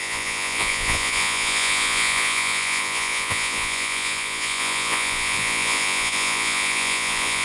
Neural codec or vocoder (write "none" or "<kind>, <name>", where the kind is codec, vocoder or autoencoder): vocoder, Vocos